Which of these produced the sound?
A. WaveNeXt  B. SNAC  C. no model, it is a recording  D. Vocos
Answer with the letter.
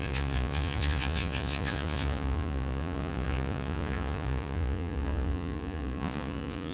D